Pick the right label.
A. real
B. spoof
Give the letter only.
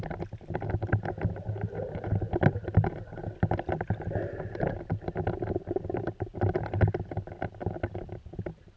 A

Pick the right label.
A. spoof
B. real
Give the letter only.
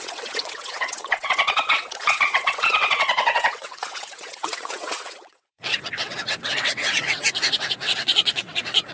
A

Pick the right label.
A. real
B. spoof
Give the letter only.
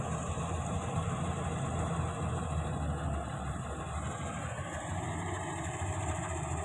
A